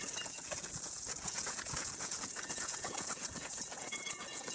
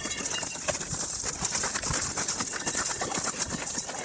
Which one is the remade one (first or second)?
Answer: first